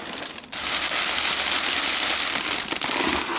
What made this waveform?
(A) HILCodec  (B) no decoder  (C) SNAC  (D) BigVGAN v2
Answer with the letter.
B